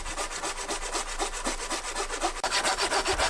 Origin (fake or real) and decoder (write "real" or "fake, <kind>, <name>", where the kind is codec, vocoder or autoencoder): real